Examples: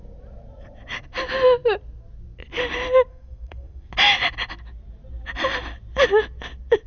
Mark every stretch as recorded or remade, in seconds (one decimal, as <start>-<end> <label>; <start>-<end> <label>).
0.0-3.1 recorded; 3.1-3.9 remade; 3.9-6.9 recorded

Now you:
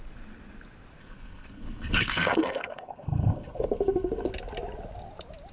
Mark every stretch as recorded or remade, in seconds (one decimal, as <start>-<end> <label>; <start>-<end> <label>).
0.0-1.0 recorded; 1.0-4.3 remade; 4.3-5.5 recorded

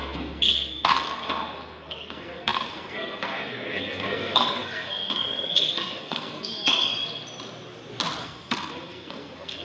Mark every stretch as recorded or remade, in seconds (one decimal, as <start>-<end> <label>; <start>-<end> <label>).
0.0-6.9 remade; 6.9-8.2 recorded; 8.2-9.6 remade